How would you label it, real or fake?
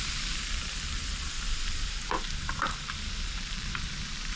fake